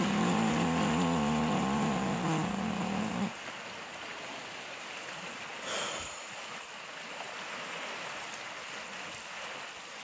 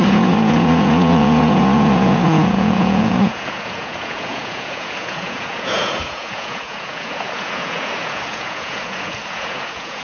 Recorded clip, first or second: first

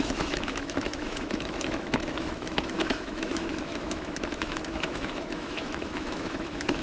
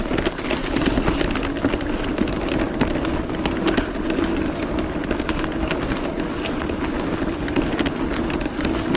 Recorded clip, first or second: second